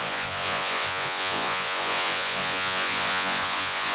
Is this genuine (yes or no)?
no